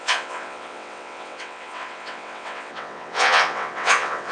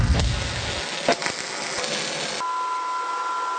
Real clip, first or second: second